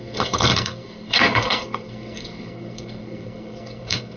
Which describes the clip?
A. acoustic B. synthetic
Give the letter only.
B